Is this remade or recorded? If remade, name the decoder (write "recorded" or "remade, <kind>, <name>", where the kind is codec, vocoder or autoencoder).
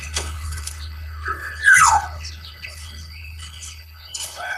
remade, codec, HILCodec